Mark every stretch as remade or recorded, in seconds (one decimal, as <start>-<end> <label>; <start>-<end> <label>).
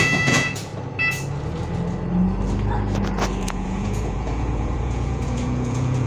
0.0-0.7 remade; 0.7-3.4 recorded; 3.4-6.1 remade